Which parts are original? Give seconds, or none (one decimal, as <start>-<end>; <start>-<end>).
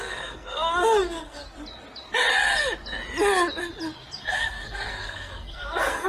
1.4-4.2